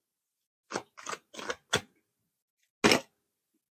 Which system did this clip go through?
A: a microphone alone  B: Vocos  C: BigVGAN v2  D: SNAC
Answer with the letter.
A